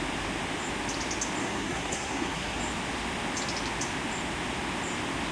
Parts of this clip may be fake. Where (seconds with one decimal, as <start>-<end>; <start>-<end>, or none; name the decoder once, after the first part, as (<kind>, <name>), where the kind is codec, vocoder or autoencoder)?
1.4-2.6 (codec, SNAC)